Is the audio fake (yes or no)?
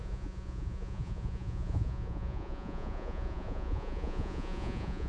yes